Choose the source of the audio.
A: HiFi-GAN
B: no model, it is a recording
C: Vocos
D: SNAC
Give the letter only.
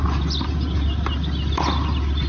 B